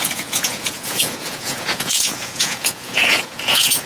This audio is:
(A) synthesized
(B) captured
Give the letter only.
A